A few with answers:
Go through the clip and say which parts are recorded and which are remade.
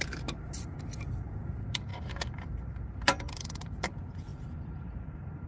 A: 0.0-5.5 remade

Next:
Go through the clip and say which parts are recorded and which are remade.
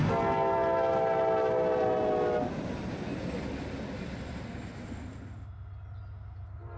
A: 0.0-6.8 recorded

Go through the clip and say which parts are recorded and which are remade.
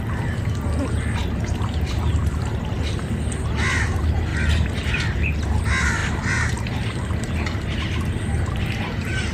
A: 0.0-1.2 recorded; 1.2-2.6 remade; 2.6-4.3 recorded; 4.3-5.6 remade; 5.6-6.0 recorded; 6.0-8.6 remade; 8.6-9.3 recorded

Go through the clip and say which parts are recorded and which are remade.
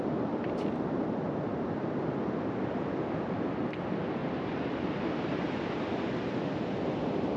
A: 0.0-4.2 recorded; 4.2-6.6 remade; 6.6-7.4 recorded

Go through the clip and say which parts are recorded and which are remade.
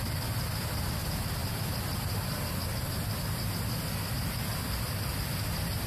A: 0.0-5.9 recorded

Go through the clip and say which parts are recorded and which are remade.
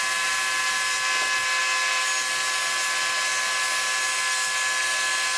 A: 0.0-5.4 recorded